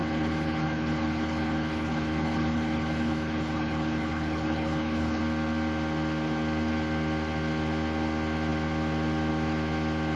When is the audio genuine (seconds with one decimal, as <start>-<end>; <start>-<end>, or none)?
5.2-10.2